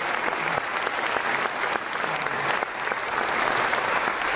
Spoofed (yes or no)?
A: no